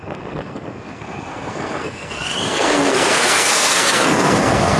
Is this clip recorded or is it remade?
remade